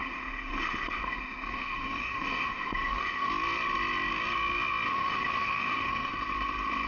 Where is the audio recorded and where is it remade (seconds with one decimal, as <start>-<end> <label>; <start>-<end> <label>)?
0.0-3.3 remade; 3.3-4.9 recorded; 4.9-6.1 remade; 6.1-6.9 recorded